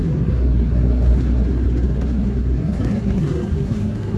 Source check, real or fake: fake